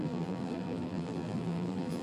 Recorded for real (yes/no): no